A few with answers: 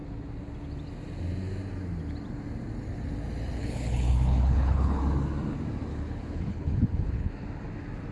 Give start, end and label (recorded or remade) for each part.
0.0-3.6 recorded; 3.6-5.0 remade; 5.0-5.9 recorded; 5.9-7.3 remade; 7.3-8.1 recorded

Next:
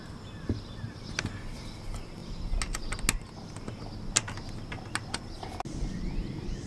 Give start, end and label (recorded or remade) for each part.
0.0-6.7 recorded

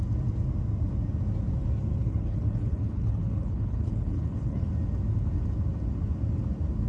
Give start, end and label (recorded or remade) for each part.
0.0-1.9 recorded; 1.9-4.7 remade; 4.7-6.9 recorded